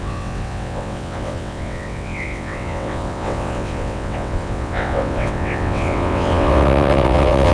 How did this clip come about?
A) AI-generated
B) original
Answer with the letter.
A